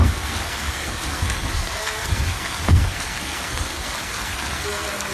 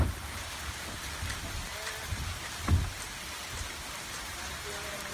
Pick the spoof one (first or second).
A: first